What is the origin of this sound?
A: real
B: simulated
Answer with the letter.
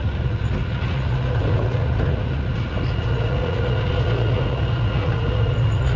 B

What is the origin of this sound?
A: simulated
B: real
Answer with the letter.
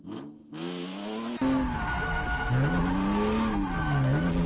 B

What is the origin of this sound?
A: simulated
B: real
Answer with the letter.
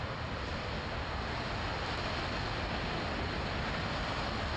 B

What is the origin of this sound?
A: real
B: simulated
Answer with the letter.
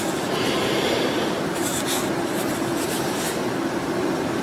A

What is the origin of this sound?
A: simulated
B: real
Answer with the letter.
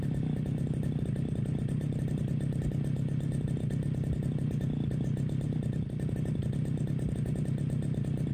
B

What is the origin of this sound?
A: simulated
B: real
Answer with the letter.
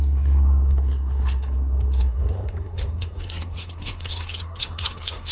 A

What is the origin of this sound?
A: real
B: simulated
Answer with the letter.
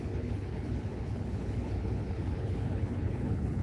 B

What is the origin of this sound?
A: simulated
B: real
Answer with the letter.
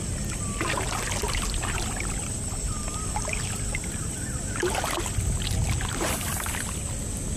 B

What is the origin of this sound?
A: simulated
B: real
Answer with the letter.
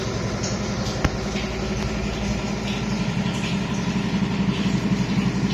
B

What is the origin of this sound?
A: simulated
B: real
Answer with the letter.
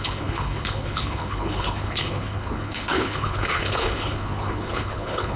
A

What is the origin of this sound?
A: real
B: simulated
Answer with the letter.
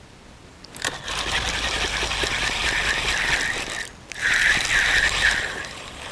A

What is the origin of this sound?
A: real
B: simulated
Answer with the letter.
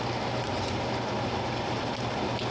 A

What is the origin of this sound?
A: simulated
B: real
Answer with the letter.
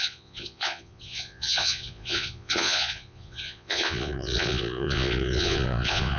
A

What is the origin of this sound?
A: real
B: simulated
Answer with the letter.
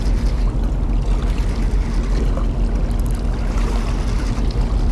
A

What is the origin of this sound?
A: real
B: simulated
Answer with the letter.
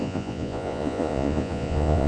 B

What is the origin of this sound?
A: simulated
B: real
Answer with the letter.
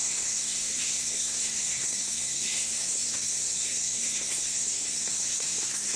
A